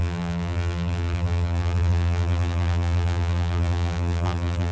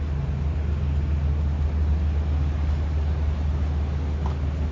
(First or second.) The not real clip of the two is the first